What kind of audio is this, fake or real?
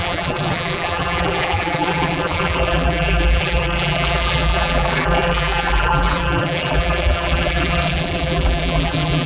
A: fake